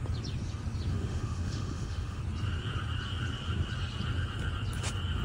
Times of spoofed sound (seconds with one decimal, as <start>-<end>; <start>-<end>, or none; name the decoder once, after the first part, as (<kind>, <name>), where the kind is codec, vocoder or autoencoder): 0.9-2.2 (autoencoder, DAC-VAE)